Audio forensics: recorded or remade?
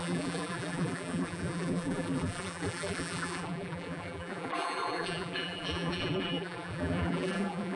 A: remade